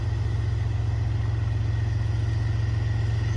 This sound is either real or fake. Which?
real